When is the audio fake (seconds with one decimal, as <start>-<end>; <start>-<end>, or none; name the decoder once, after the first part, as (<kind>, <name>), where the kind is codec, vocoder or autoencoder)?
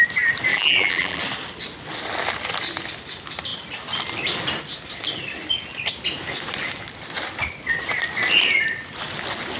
0.5-1.2 (vocoder, BigVGAN v2)